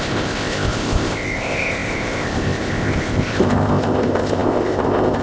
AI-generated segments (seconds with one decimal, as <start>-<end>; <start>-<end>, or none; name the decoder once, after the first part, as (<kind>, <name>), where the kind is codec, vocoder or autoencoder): 0.0-5.2 (codec, ZipCodec)